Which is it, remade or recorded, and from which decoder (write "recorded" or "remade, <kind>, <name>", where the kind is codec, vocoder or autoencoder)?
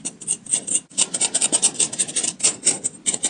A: recorded